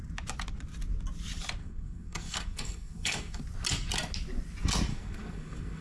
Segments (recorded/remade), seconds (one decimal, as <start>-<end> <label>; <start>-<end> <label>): 0.0-1.6 recorded; 1.6-3.4 remade; 3.4-4.9 recorded; 4.9-5.8 remade